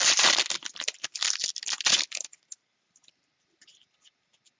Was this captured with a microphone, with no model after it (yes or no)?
yes